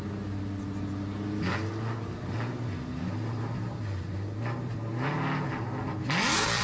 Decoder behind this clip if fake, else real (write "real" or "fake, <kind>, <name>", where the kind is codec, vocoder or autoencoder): real